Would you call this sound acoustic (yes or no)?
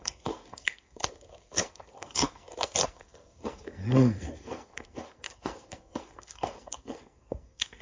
no